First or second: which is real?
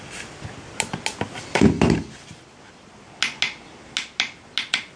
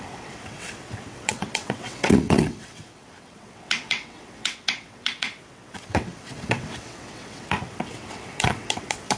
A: first